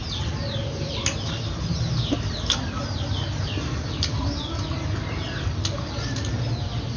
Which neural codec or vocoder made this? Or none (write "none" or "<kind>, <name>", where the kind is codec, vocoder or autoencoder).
none